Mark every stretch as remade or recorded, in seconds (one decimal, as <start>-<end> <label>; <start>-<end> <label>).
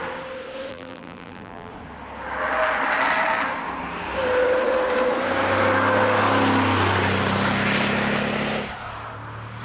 0.0-0.7 recorded; 0.7-1.7 remade; 1.7-9.6 recorded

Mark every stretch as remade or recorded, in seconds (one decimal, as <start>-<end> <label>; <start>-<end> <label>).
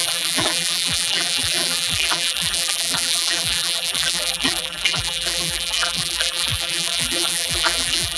0.0-8.2 remade